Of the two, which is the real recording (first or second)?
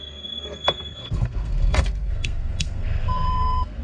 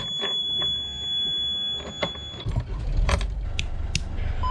second